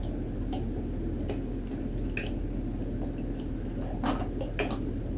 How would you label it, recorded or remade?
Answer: recorded